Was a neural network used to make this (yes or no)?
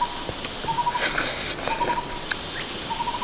no